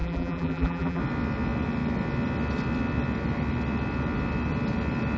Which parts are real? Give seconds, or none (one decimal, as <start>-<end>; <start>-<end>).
1.0-5.2